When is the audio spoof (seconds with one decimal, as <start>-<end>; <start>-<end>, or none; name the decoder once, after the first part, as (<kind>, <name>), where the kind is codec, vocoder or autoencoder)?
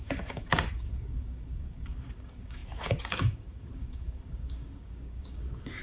0.0-5.8 (codec, DAC)